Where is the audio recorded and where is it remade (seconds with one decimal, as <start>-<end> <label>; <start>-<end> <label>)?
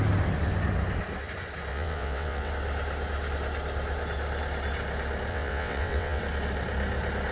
0.0-1.7 recorded; 1.7-2.5 remade; 2.5-5.3 recorded; 5.3-6.2 remade; 6.2-7.3 recorded